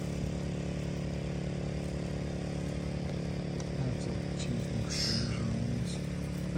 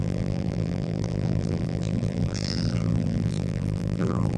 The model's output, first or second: second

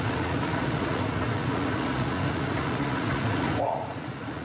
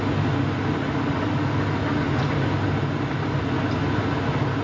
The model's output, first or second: first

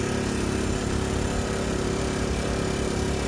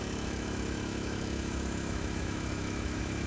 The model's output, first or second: second